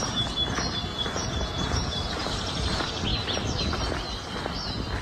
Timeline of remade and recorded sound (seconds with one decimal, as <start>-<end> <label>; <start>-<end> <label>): 0.0-0.9 recorded; 0.9-2.3 remade; 2.3-5.0 recorded